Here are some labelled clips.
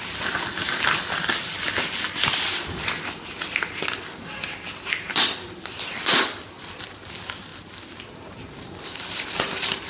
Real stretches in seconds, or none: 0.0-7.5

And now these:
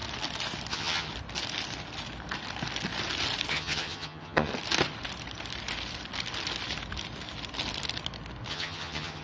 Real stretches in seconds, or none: 0.0-0.7; 1.1-3.5; 4.5-8.5

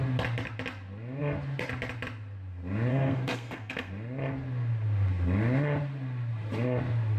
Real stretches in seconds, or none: 0.0-2.9; 3.9-7.2